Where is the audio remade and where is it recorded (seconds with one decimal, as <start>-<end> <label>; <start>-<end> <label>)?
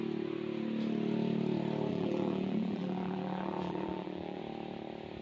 0.0-1.9 recorded; 1.9-4.4 remade; 4.4-5.2 recorded